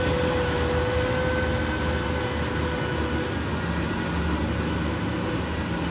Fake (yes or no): no